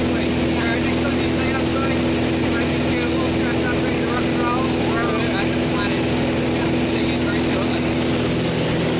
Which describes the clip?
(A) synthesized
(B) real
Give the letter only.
B